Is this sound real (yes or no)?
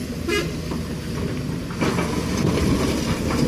yes